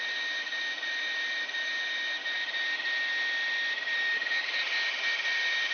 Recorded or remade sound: recorded